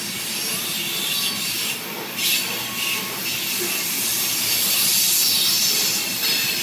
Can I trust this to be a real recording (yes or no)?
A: yes